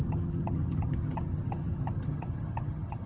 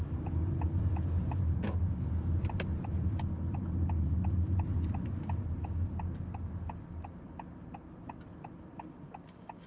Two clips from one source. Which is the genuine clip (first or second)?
second